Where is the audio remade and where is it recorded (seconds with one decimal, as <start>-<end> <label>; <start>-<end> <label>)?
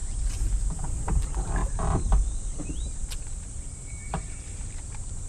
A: 0.0-5.3 remade